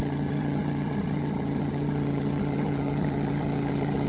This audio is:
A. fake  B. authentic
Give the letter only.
A